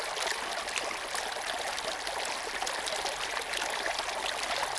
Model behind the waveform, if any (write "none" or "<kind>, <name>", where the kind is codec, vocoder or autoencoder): none